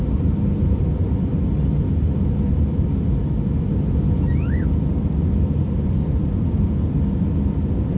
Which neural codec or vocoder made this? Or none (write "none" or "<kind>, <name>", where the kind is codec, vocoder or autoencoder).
none